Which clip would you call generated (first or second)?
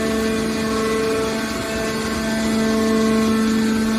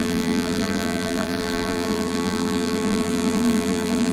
second